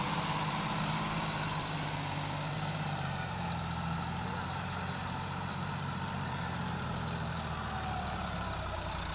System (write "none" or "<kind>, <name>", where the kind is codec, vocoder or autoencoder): vocoder, BigVGAN v2